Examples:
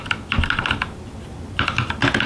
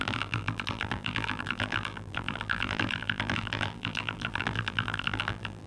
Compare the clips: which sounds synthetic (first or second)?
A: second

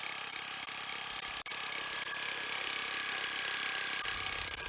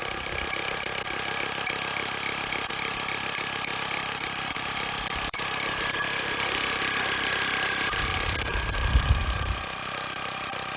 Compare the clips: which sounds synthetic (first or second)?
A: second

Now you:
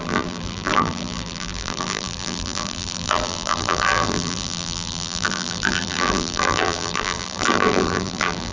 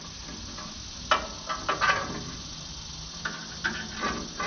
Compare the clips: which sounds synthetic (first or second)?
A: first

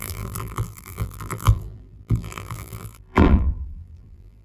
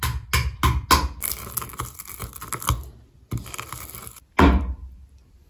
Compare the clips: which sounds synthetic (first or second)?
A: first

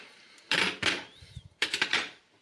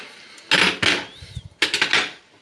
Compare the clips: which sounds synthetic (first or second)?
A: first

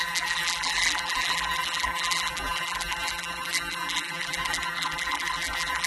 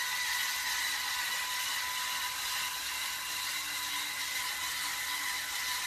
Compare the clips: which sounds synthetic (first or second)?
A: first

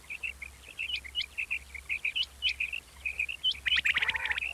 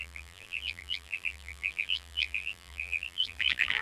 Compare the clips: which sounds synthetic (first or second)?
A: second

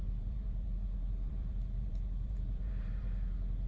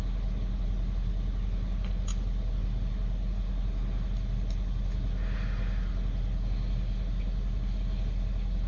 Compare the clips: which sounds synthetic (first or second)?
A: first